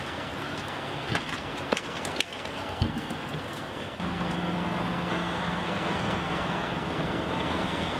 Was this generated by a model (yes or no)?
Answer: yes